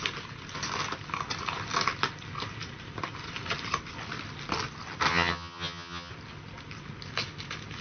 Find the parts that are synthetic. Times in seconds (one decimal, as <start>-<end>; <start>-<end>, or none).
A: 5.1-6.1